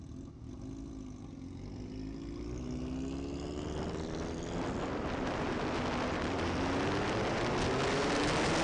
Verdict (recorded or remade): recorded